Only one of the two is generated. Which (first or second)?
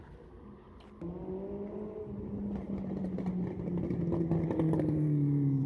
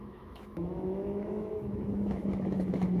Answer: second